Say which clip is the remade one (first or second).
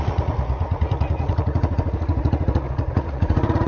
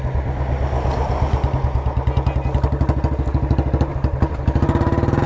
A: first